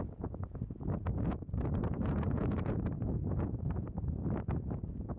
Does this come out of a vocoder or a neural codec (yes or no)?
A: yes